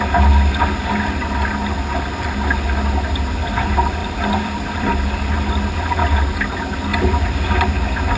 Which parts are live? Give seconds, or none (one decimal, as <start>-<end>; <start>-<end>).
0.0-4.0; 5.7-6.9; 7.5-8.2